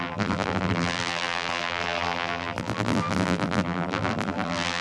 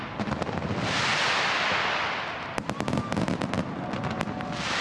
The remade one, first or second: first